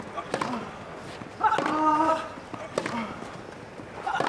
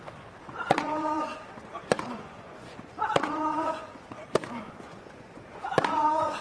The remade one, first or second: second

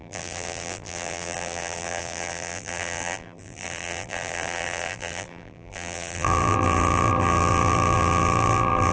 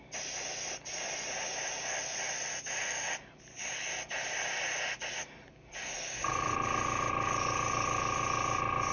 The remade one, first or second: first